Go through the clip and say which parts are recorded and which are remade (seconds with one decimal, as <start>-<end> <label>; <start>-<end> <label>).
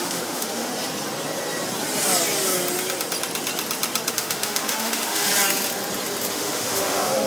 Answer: 0.0-0.7 remade; 0.7-4.1 recorded; 4.1-5.3 remade; 5.3-6.3 recorded; 6.3-7.3 remade